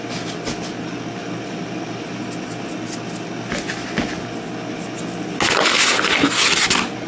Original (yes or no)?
yes